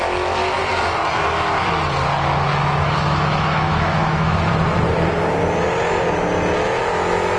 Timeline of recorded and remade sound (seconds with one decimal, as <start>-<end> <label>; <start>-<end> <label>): 0.0-2.6 recorded; 2.6-4.5 remade; 4.5-7.4 recorded